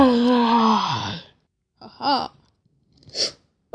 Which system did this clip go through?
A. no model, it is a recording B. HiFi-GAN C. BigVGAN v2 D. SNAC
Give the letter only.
A